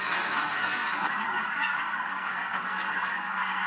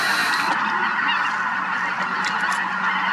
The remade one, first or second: first